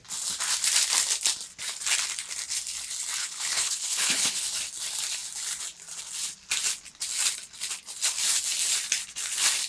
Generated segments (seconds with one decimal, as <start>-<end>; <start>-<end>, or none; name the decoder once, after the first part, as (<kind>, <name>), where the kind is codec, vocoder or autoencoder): 3.2-4.5 (codec, HILCodec)